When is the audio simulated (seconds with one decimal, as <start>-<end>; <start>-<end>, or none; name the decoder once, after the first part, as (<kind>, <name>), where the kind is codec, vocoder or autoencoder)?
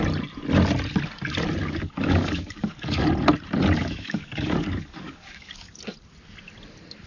1.6-3.0 (codec, DAC); 3.8-5.8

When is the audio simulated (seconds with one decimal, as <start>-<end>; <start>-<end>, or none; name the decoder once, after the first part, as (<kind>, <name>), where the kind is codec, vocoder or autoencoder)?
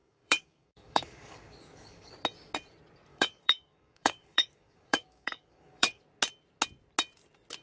0.0-2.1 (codec, DAC); 3.1-6.0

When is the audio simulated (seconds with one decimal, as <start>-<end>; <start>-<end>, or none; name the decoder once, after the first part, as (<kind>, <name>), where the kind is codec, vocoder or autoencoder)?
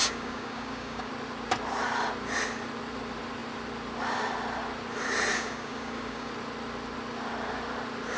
0.0-1.1 (codec, DAC); 5.3-6.3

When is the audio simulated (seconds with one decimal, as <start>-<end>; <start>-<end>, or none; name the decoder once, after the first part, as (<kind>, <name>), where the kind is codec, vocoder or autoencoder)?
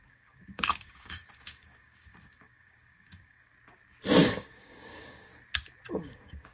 0.0-3.5 (codec, DAC); 4.2-5.3; 5.9-6.5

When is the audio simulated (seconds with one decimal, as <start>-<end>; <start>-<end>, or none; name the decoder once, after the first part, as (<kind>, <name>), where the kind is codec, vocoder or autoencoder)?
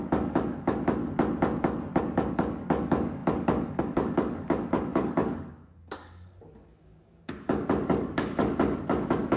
0.0-1.0 (codec, DAC); 2.0-9.4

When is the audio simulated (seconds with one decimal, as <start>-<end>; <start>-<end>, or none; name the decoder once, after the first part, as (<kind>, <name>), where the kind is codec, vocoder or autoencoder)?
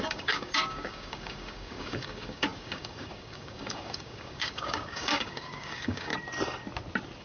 0.0-6.1 (codec, DAC)